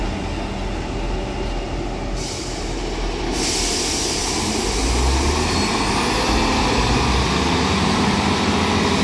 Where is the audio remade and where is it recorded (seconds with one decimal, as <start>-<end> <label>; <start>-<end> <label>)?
0.0-9.0 recorded